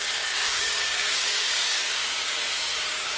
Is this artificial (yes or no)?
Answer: yes